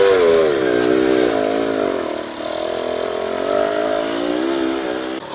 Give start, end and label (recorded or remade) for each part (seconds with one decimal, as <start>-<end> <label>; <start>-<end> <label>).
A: 0.0-5.3 recorded